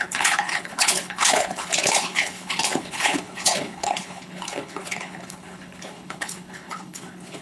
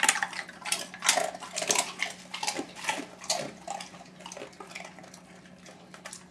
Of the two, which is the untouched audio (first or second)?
second